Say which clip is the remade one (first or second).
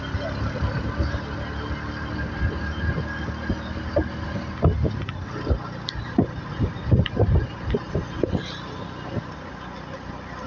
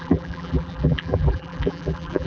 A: second